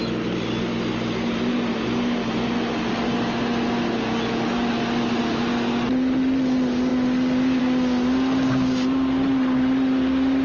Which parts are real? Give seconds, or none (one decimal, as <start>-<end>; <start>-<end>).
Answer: 0.0-10.4